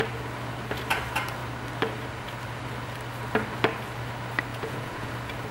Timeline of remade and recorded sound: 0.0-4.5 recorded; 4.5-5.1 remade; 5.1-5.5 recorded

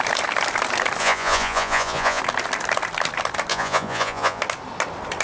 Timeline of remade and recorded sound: 0.0-1.0 recorded; 1.0-2.2 remade; 2.2-3.5 recorded; 3.5-4.4 remade; 4.4-5.2 recorded

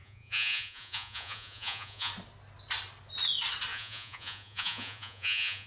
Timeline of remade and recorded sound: 0.0-2.1 remade; 2.1-3.7 recorded; 3.7-5.7 remade